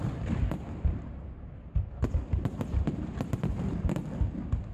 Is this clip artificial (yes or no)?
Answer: no